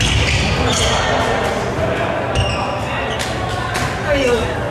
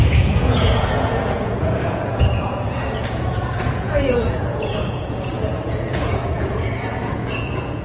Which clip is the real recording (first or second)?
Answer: first